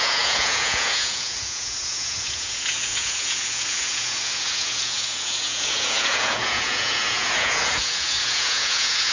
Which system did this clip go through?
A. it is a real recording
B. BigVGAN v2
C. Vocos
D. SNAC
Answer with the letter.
C